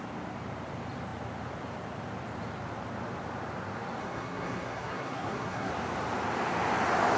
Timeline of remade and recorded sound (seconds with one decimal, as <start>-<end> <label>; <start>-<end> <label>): 0.0-4.0 recorded; 4.0-5.7 remade; 5.7-7.2 recorded